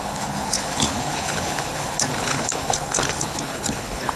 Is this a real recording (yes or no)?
no